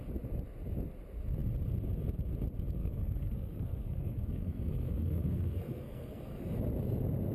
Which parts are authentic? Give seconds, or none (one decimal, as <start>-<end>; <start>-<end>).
0.0-2.8; 6.6-7.3